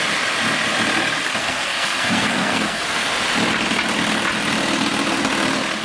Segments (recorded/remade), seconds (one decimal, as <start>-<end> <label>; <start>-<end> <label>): 0.0-1.4 recorded; 1.4-3.1 remade; 3.1-5.8 recorded